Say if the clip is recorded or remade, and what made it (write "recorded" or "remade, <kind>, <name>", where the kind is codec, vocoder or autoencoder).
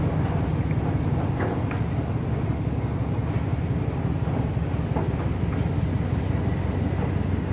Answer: recorded